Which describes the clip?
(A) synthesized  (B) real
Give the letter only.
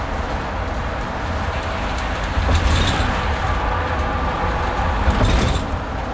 B